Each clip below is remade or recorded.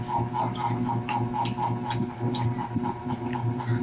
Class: recorded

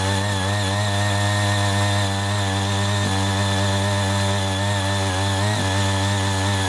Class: recorded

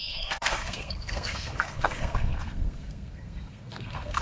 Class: remade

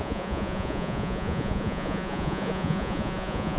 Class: remade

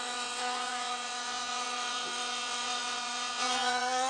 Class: remade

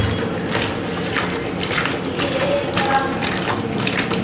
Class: recorded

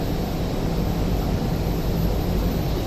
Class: recorded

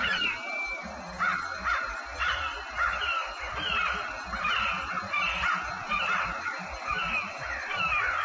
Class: recorded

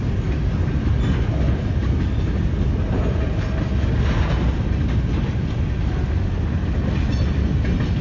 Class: recorded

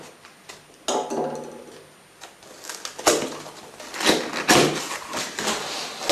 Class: recorded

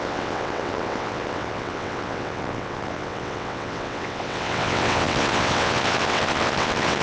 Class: remade